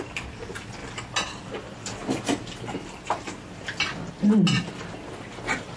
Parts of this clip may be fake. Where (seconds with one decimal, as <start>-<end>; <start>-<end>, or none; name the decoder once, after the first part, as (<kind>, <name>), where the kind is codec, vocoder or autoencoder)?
none